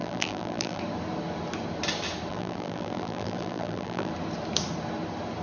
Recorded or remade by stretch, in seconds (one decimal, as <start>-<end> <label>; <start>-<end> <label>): 0.0-0.8 remade; 0.8-2.3 recorded; 2.3-4.1 remade; 4.1-5.4 recorded